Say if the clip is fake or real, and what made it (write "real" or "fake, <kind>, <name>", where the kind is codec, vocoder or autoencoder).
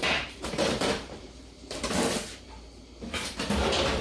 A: fake, vocoder, BigVGAN v2